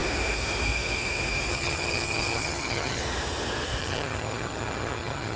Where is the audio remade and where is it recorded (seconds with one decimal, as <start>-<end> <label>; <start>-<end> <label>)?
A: 0.0-1.5 recorded; 1.5-3.0 remade; 3.0-3.8 recorded; 3.8-5.4 remade